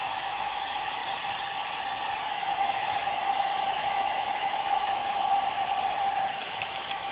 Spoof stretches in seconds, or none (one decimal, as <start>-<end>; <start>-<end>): 0.0-1.0; 2.2-5.0; 6.3-7.1